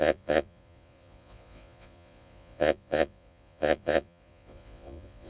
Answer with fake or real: fake